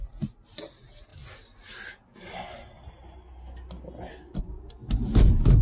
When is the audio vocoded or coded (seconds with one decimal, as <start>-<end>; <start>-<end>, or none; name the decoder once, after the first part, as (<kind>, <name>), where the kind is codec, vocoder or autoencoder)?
none